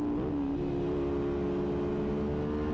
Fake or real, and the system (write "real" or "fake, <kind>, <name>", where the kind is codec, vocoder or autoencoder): real